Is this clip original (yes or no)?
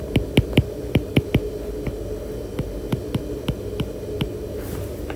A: yes